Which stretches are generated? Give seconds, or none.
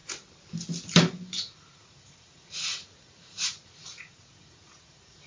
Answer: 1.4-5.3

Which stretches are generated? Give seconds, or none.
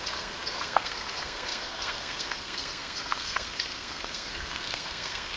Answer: 0.0-5.4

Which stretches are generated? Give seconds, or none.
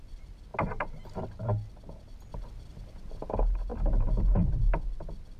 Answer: none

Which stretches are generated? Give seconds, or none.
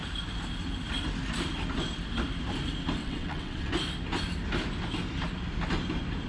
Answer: 3.0-3.7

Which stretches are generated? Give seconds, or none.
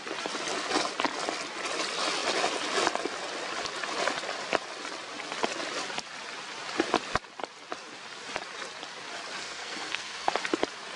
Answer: 9.4-10.3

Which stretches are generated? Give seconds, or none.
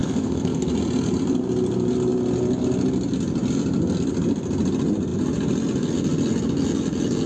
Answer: 0.0-0.7